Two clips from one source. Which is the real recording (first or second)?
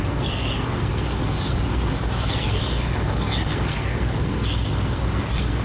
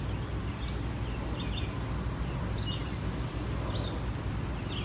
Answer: second